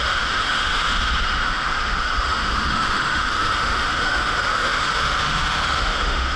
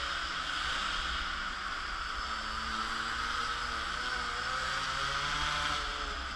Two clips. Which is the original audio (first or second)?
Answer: second